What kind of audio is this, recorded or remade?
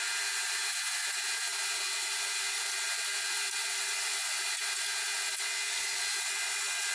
recorded